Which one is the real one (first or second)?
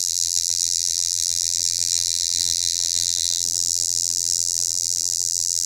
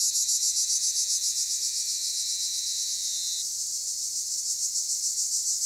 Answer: second